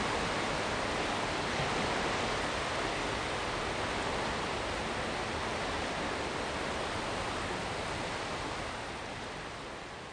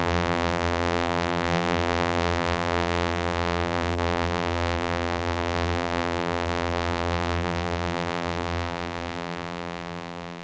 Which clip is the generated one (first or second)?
second